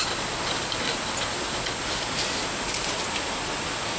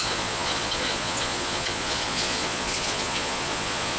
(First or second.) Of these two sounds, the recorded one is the first